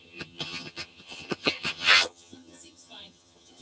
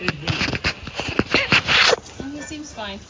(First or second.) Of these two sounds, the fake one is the first